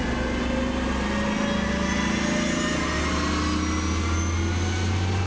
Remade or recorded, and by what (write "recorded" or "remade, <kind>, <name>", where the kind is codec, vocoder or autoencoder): recorded